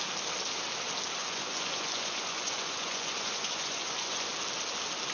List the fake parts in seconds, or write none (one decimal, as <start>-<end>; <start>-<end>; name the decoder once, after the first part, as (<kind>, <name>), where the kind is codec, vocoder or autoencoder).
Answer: 1.2-4.3 (vocoder, Vocos)